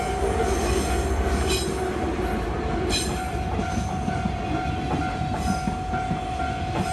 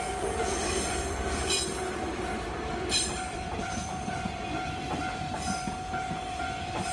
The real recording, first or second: first